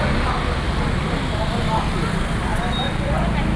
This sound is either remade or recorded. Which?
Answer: recorded